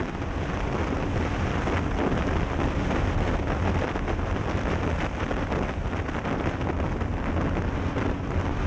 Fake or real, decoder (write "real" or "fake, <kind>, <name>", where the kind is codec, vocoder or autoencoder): real